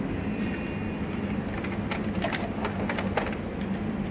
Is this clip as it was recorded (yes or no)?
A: yes